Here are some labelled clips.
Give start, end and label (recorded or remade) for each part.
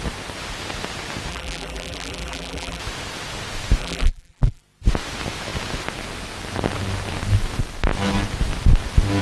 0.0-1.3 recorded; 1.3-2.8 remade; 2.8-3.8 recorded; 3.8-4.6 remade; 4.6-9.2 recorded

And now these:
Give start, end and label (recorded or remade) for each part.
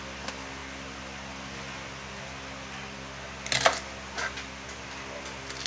0.0-5.7 recorded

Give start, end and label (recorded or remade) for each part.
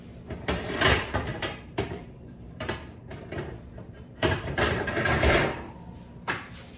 0.0-1.3 recorded; 1.3-4.8 remade; 4.8-6.8 recorded